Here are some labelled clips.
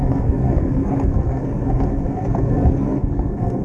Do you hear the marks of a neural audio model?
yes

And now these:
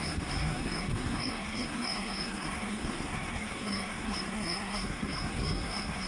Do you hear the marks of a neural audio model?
yes